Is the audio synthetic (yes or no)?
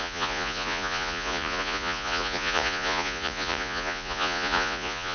yes